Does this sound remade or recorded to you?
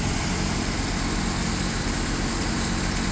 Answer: recorded